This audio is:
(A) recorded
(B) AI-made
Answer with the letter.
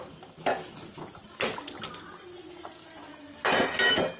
A